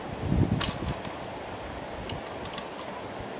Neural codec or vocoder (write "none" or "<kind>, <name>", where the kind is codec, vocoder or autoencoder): none